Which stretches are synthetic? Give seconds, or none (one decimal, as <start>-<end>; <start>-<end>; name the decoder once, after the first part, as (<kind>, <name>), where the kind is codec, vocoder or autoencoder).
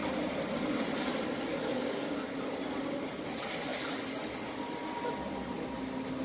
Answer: 1.5-2.5 (codec, DAC)